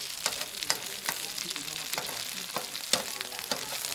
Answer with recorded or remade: recorded